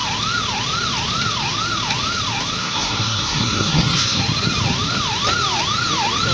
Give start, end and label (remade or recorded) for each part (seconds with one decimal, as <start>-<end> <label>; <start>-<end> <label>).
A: 0.0-2.6 recorded; 2.6-4.2 remade; 4.2-6.3 recorded